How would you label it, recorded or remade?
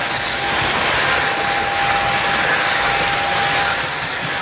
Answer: recorded